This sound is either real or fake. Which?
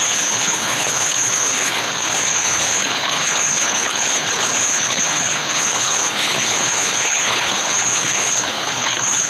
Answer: fake